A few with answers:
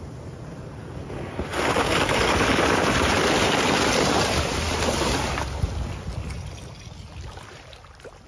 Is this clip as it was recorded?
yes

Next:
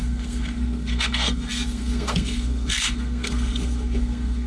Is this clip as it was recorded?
no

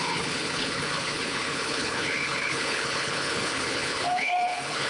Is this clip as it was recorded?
no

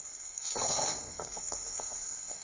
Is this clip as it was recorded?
no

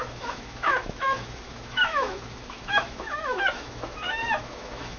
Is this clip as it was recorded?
no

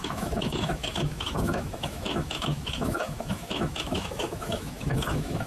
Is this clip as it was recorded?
no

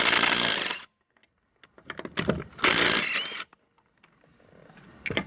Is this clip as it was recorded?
yes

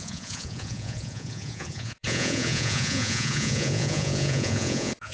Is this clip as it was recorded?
no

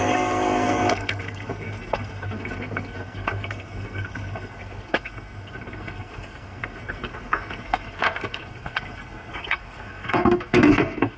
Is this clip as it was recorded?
no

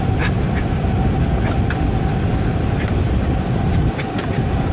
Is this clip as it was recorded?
yes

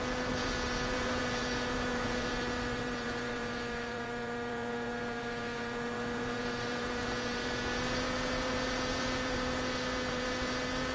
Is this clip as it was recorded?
no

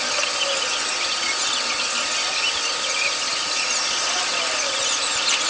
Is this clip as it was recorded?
yes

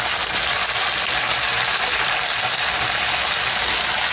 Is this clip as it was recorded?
yes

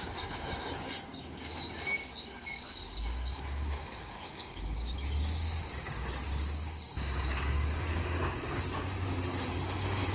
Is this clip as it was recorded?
no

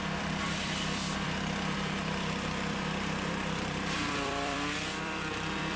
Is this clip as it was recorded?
no